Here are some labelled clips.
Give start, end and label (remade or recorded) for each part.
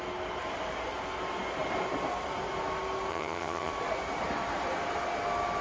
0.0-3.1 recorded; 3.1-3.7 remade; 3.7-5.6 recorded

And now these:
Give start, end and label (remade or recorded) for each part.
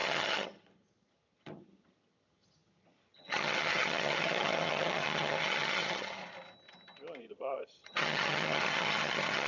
0.0-6.2 remade; 6.2-7.2 recorded; 7.2-9.5 remade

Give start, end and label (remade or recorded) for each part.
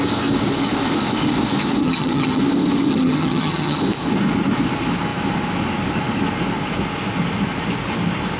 0.0-1.8 recorded; 1.8-2.4 remade; 2.4-2.9 recorded; 2.9-3.8 remade; 3.8-8.4 recorded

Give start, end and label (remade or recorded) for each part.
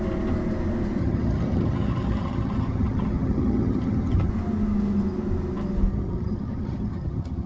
0.0-1.0 recorded; 1.0-4.3 remade; 4.3-5.9 recorded; 5.9-7.5 remade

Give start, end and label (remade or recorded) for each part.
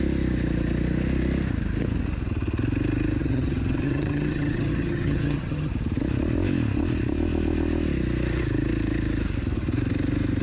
0.0-3.2 recorded; 3.2-5.7 remade; 5.7-10.4 recorded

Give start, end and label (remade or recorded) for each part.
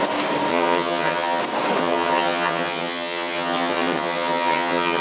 0.0-0.5 recorded; 0.5-1.4 remade; 1.4-1.8 recorded; 1.8-5.0 remade